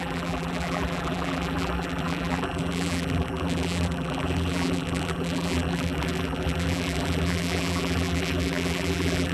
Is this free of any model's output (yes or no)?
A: no